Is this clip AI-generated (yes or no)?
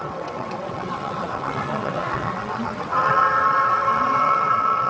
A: yes